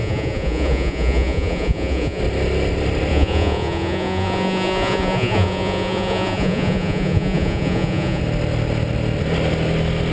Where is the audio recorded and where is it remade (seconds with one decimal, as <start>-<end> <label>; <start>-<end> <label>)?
0.0-2.2 remade; 2.2-3.1 recorded; 3.1-8.2 remade; 8.2-10.1 recorded